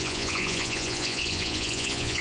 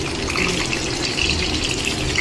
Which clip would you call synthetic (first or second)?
first